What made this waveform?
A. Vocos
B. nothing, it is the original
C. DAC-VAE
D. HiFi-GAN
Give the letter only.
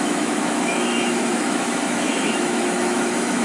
C